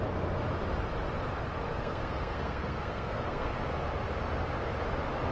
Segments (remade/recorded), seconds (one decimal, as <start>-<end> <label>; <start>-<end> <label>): 0.0-1.7 recorded; 1.7-3.6 remade; 3.6-5.3 recorded